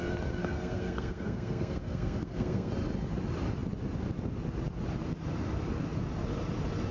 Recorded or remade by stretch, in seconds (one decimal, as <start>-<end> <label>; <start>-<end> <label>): 0.0-0.4 recorded; 0.4-2.7 remade; 2.7-6.9 recorded